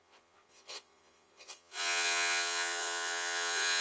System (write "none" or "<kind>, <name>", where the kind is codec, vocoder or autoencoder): vocoder, Vocos